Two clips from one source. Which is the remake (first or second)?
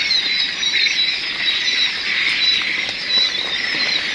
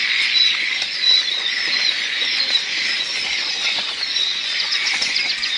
second